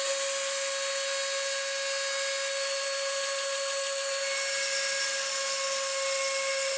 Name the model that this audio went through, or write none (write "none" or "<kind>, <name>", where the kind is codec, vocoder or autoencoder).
none